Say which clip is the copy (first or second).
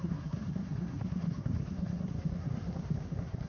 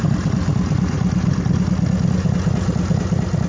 first